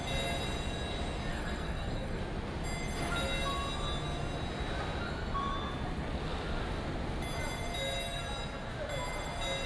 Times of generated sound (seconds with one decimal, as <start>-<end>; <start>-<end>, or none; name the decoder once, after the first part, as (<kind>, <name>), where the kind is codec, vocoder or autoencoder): 1.3-2.2 (codec, SNAC)